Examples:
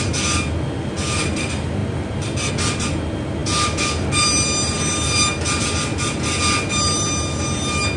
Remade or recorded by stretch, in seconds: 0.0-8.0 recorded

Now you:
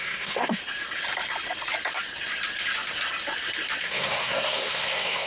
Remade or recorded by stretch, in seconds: 0.0-0.6 remade; 0.6-3.8 recorded; 3.8-5.3 remade

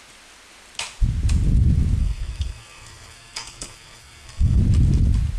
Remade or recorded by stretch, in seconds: 0.0-2.0 recorded; 2.0-4.6 remade; 4.6-5.4 recorded

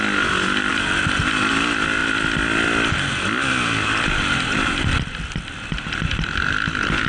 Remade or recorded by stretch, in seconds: 0.0-7.1 recorded

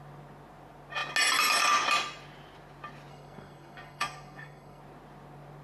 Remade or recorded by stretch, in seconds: 0.0-3.1 recorded; 3.1-4.8 remade; 4.8-5.6 recorded

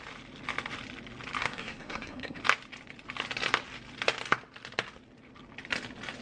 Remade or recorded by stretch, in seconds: 0.0-1.4 recorded; 1.4-2.4 remade; 2.4-6.2 recorded

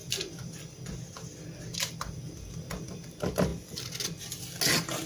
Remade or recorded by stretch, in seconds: 0.0-5.1 recorded